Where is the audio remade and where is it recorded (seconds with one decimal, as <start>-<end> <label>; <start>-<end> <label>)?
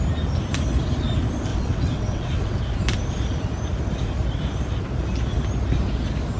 0.0-1.5 recorded; 1.5-2.6 remade; 2.6-6.4 recorded